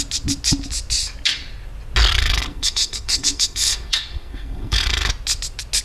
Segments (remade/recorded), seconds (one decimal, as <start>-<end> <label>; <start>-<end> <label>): 0.0-2.2 recorded; 2.2-5.1 remade; 5.1-5.8 recorded